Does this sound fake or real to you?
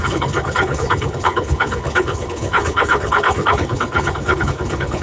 fake